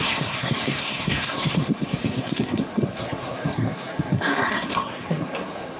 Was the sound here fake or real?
fake